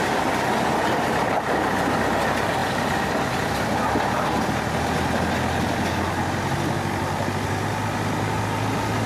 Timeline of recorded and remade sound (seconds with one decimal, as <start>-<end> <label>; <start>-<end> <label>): 0.0-9.1 recorded